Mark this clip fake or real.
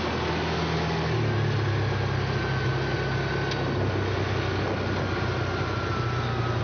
real